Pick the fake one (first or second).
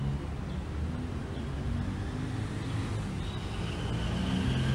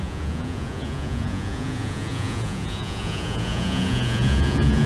second